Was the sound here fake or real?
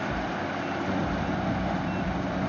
real